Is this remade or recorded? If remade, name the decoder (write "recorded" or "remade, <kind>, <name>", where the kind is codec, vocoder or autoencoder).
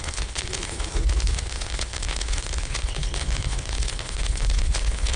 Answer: remade, codec, HILCodec